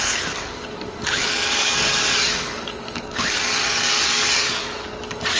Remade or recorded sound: remade